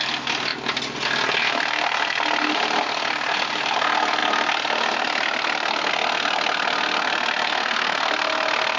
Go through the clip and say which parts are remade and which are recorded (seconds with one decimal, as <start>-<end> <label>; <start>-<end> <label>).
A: 0.0-7.5 recorded; 7.5-8.1 remade; 8.1-8.8 recorded